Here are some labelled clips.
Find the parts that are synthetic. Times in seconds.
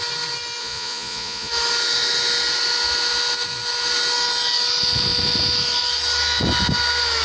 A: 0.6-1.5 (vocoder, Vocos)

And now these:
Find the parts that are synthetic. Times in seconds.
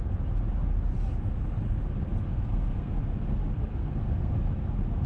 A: 2.3-3.0 (codec, SNAC); 3.7-4.3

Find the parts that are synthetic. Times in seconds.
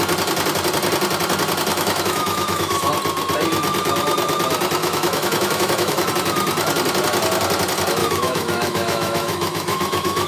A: 1.7-2.9 (autoencoder, DAC-VAE); 4.8-6.1; 8.0-10.3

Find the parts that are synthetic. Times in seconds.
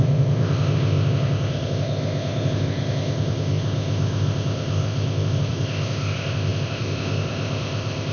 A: 0.0-8.1 (codec, ZipCodec)